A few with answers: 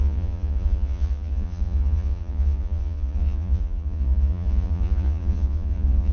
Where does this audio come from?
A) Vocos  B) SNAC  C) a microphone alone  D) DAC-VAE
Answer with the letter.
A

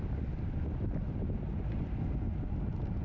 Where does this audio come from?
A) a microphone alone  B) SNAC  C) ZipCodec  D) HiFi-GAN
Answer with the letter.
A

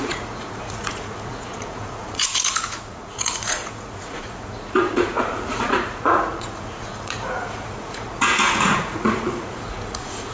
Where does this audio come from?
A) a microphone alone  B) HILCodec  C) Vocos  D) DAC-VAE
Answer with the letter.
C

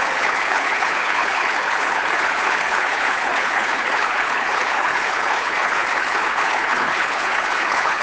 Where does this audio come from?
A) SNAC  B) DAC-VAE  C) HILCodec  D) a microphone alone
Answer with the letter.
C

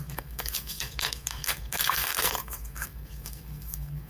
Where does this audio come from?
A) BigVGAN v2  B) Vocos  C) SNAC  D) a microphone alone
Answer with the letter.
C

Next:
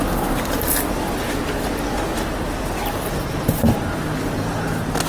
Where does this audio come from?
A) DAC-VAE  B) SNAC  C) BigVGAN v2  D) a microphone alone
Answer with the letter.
D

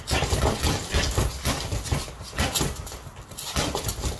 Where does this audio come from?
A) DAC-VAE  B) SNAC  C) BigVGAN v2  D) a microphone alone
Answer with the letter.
D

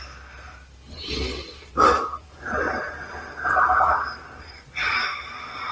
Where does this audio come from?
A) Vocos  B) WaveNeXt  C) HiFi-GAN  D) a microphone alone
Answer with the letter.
D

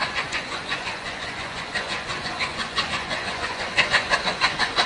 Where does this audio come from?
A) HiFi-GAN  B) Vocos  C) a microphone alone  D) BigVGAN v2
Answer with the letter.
B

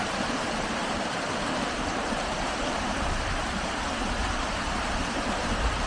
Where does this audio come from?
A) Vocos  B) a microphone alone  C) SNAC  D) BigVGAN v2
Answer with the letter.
D